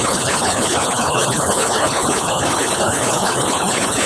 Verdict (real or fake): fake